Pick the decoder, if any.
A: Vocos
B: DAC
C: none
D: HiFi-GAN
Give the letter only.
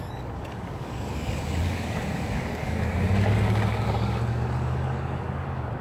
B